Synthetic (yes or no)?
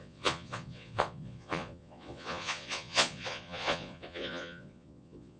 yes